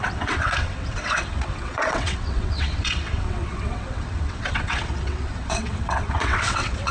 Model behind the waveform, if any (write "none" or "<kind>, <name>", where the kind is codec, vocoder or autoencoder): vocoder, WaveNeXt